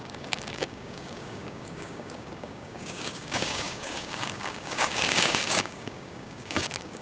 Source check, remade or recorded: remade